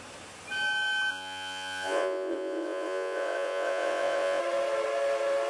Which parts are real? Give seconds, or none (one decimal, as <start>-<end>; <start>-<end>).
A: 0.0-1.1; 4.4-5.5